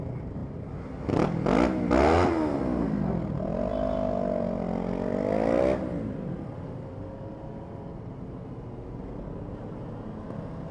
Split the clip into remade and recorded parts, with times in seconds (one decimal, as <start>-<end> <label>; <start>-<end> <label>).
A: 0.0-10.7 recorded